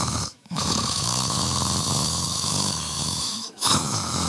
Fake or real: fake